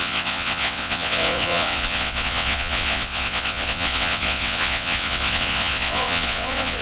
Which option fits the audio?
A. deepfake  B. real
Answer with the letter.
A